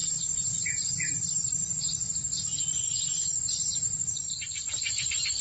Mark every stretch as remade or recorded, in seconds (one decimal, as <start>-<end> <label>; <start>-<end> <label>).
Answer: 0.0-2.4 remade; 2.4-3.8 recorded; 3.8-5.4 remade